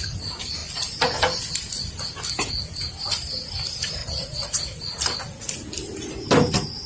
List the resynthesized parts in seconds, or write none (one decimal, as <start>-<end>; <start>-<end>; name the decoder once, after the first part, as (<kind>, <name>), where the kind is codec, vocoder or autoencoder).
4.0-4.6 (vocoder, Vocos)